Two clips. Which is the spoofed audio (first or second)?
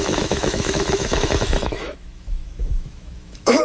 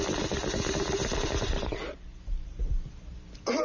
first